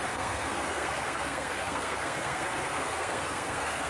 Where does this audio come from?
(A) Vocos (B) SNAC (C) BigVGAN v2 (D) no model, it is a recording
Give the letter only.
B